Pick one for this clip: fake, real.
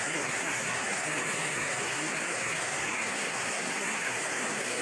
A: fake